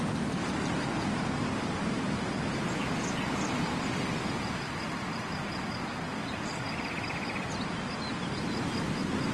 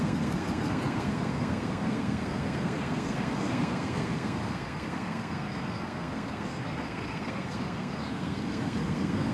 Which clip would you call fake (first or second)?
second